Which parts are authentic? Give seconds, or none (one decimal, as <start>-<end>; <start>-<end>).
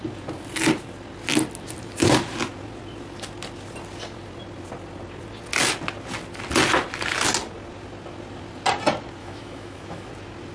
0.0-9.2; 10.1-10.5